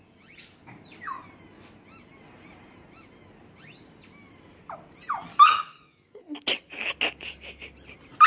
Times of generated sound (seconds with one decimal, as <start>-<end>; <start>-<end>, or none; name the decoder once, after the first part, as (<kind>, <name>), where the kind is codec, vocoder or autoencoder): 5.3-6.2 (codec, DAC)